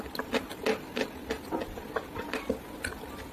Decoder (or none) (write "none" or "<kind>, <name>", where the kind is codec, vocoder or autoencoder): none